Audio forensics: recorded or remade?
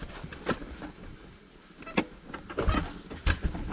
recorded